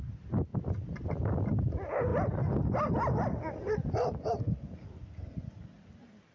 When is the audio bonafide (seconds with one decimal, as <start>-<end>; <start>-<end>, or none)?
0.0-6.3